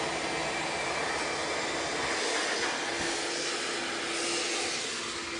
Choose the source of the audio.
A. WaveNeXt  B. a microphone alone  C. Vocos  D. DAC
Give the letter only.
B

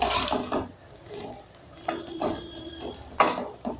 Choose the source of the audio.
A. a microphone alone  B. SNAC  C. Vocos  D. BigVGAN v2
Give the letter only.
A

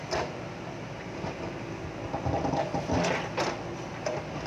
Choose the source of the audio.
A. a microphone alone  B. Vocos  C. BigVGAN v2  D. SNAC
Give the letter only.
A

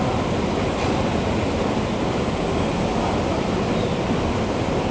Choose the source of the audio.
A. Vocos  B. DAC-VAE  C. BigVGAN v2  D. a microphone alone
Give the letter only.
D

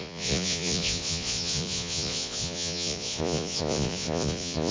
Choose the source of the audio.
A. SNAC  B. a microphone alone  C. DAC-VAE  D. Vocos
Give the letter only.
D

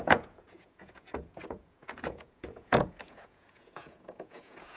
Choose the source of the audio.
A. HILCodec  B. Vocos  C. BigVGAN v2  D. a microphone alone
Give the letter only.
B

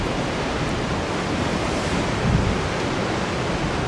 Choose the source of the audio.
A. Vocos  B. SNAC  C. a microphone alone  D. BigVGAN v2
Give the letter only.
C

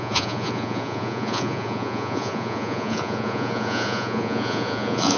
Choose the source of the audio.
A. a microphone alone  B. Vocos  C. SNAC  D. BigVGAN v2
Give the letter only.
B